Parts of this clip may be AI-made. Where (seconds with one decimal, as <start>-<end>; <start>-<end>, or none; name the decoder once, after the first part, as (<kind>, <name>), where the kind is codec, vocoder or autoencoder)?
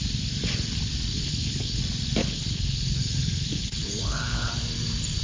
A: 1.1-1.8 (codec, HILCodec); 2.2-4.5